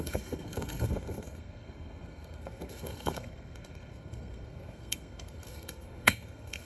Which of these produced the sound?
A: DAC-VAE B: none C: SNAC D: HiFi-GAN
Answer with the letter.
C